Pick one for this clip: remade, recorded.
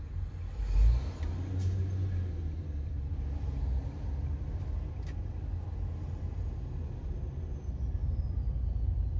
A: recorded